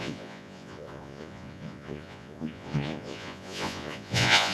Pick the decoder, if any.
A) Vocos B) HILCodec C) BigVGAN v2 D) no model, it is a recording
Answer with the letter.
A